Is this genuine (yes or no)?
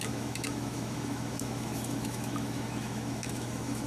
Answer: no